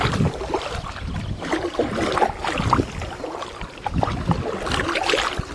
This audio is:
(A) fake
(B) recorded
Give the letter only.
B